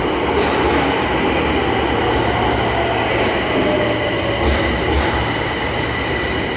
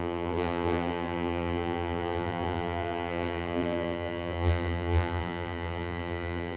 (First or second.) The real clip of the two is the first